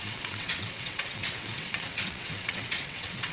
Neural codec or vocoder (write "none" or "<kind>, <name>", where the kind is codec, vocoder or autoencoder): vocoder, WaveNeXt